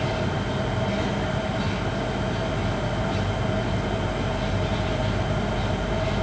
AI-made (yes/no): no